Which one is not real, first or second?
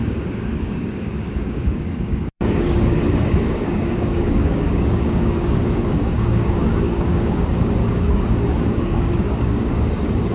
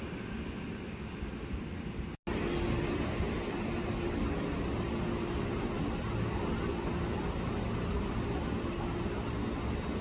first